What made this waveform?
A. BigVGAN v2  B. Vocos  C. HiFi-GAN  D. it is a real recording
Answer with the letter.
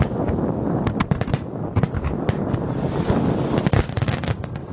D